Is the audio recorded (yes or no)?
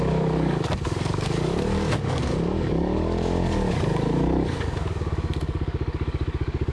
no